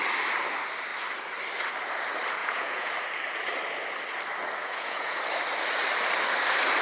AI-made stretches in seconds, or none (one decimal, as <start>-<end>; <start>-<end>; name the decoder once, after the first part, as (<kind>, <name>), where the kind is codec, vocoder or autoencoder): 2.4-2.9 (vocoder, Vocos); 4.6-5.2